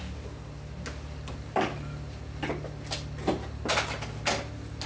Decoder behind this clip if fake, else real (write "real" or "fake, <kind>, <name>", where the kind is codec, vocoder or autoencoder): real